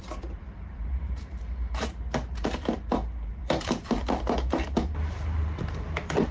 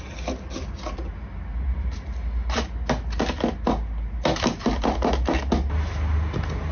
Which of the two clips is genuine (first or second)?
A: second